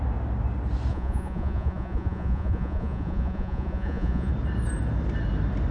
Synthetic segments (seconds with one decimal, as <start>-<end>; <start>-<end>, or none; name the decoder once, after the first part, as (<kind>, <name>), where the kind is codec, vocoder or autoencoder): 0.9-4.3 (vocoder, Vocos)